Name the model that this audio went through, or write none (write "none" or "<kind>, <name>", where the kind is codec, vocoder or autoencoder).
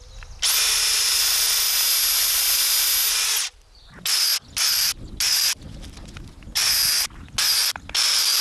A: none